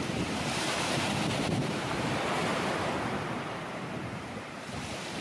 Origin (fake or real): fake